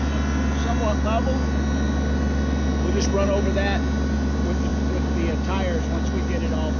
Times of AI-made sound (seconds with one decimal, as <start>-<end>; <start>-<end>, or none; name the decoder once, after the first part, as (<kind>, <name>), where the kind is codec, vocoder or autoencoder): none